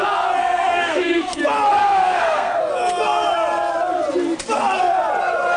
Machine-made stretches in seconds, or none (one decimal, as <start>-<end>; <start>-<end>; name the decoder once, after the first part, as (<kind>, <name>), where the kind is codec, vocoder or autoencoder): 0.4-1.4 (codec, SNAC); 1.8-2.6